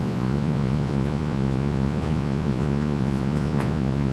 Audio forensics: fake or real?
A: fake